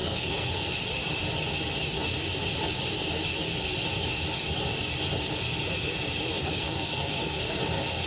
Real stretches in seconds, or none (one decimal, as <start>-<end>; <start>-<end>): 0.7-6.4; 7.6-8.1